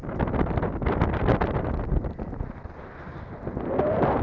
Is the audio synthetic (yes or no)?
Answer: no